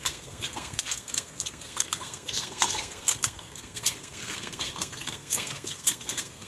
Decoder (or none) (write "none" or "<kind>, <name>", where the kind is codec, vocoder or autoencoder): codec, SNAC